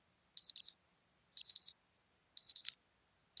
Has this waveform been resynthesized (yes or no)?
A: no